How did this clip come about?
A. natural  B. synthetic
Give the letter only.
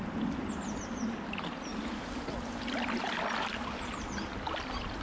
A